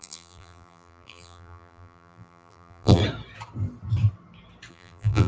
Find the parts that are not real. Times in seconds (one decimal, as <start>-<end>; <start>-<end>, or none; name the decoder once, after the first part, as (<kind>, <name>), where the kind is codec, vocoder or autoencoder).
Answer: 0.0-3.0 (vocoder, BigVGAN v2); 4.7-5.3